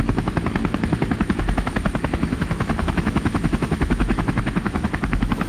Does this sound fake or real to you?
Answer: fake